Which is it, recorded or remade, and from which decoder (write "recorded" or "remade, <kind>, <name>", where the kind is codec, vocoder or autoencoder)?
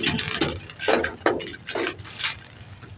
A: recorded